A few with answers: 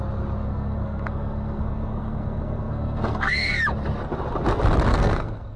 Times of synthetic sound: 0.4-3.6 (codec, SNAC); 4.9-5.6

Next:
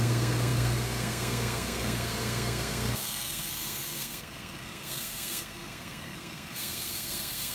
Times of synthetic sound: 0.0-7.5 (codec, SNAC)

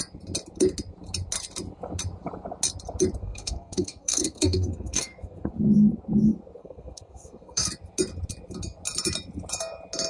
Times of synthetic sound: 3.2-5.5 (codec, SNAC); 6.6-7.7

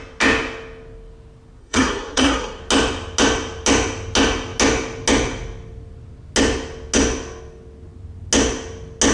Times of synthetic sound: 1.6-2.6 (codec, SNAC)

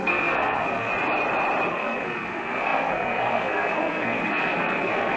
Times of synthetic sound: 0.0-0.9 (codec, SNAC); 1.7-5.2

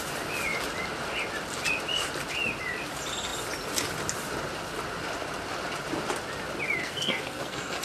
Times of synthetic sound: 6.8-7.8 (codec, SNAC)

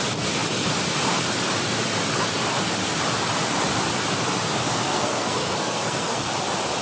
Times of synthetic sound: 4.7-6.3 (codec, SNAC)